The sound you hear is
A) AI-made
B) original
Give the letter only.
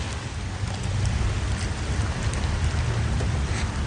B